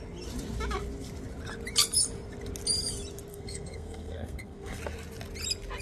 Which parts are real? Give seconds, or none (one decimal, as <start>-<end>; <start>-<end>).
0.0-3.3; 4.8-5.8